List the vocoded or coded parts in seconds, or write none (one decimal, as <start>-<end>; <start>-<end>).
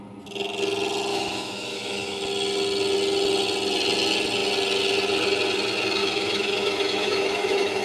1.1-2.2; 6.0-7.8